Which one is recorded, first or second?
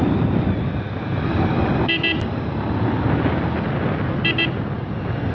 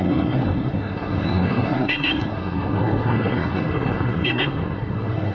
first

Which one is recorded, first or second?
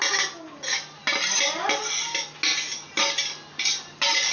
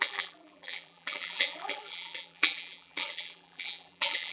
first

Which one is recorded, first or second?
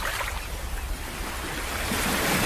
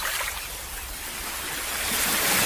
first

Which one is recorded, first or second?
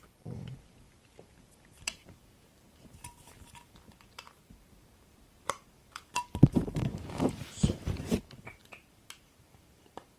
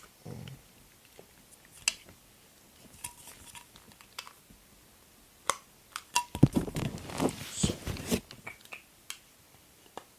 second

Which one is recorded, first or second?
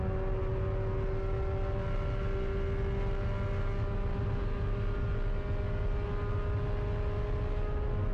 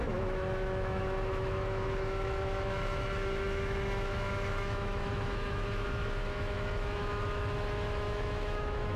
first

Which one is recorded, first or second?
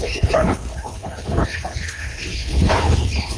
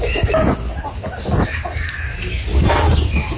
second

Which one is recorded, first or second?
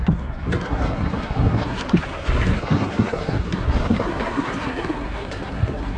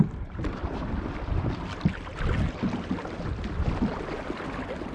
second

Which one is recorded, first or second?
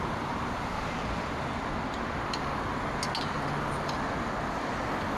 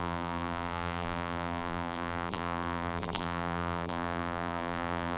first